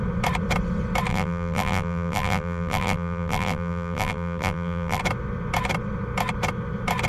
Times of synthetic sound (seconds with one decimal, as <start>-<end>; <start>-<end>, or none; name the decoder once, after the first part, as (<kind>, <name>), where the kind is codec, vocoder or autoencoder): 1.1-5.0 (vocoder, BigVGAN v2)